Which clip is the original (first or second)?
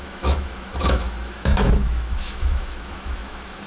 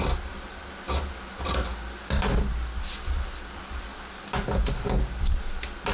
second